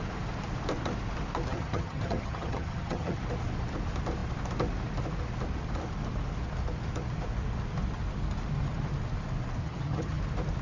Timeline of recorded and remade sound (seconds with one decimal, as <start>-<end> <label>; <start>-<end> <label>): 0.0-1.5 recorded; 1.5-3.2 remade; 3.2-9.6 recorded; 9.6-10.2 remade; 10.2-10.6 recorded